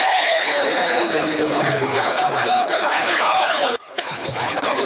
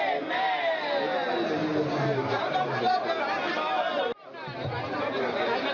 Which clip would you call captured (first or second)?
second